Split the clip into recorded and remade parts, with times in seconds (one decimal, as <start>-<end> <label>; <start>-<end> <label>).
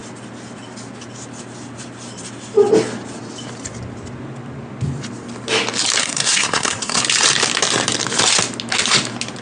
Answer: 0.0-6.0 recorded; 6.0-7.0 remade; 7.0-9.4 recorded